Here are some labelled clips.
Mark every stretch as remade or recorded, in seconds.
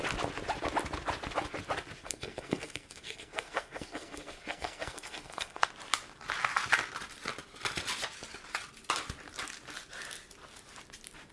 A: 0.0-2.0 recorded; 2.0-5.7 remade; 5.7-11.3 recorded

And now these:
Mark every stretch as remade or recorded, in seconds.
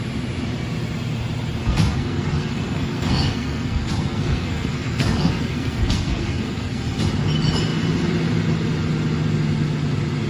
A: 0.0-1.6 recorded; 1.6-6.8 remade; 6.8-10.3 recorded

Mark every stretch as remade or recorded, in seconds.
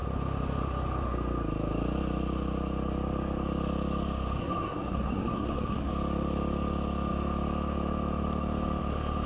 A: 0.0-4.4 recorded; 4.4-5.9 remade; 5.9-9.3 recorded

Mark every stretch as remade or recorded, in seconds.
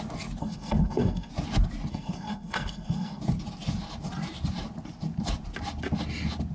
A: 0.0-0.4 recorded; 0.4-1.3 remade; 1.3-1.9 recorded; 1.9-3.2 remade; 3.2-6.5 recorded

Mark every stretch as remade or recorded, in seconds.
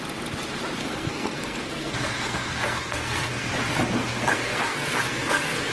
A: 0.0-0.8 recorded; 0.8-3.5 remade; 3.5-4.0 recorded; 4.0-5.7 remade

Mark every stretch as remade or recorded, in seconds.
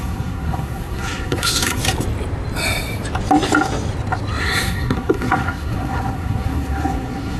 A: 0.0-1.8 remade; 1.8-4.4 recorded; 4.4-7.4 remade